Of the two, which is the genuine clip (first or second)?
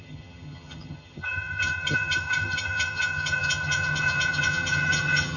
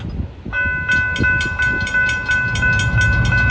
second